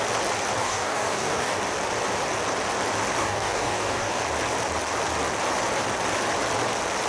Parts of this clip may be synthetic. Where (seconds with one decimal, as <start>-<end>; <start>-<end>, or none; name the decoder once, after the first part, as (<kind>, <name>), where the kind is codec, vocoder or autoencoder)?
0.6-1.6 (codec, DAC); 3.2-4.2